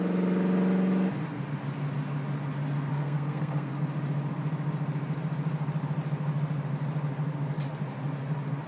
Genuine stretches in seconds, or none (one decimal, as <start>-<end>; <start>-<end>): 0.0-2.9; 3.7-8.7